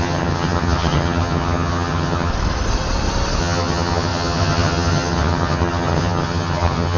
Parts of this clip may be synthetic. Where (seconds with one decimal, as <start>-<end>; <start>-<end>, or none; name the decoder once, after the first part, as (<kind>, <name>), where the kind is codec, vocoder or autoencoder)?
0.0-2.3 (vocoder, HiFi-GAN); 3.4-7.0